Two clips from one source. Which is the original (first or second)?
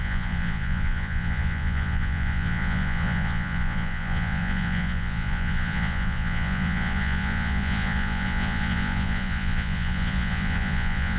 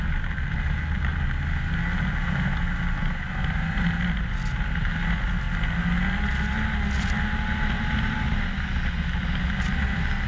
second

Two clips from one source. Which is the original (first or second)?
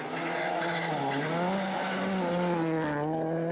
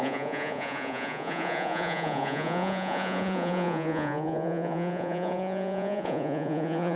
first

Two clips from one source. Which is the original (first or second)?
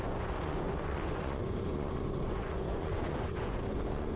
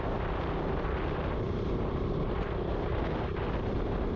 second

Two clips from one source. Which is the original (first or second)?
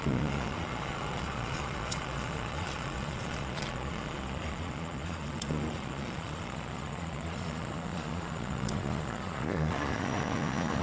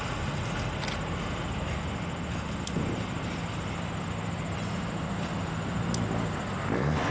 second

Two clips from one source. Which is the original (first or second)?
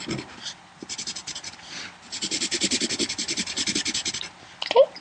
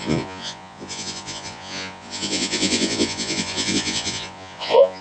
first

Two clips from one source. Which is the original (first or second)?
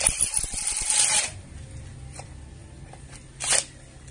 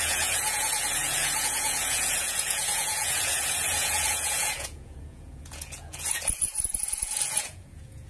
first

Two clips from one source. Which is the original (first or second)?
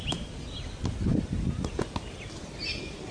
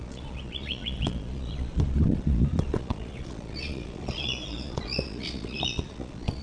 first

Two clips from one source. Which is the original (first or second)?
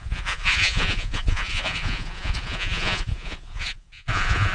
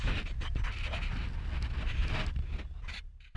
second